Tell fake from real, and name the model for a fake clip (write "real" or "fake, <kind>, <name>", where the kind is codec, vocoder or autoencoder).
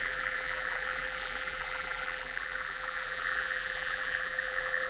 fake, vocoder, BigVGAN v2